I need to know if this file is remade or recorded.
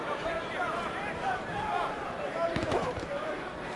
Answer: remade